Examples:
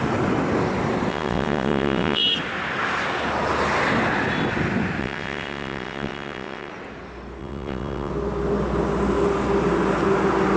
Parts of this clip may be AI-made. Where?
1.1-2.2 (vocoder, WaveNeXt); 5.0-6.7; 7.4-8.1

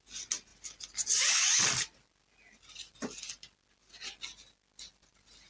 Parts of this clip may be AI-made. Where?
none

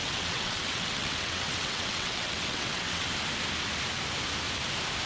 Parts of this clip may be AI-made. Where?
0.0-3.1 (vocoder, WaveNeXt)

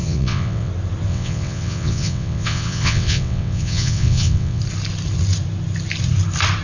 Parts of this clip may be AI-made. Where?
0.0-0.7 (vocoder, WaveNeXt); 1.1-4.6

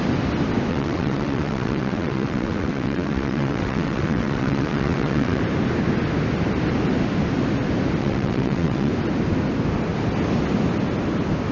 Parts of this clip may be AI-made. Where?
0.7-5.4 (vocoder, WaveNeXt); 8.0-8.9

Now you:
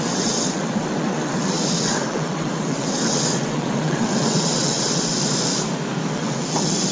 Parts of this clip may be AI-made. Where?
0.0-5.2 (vocoder, WaveNeXt); 6.1-6.9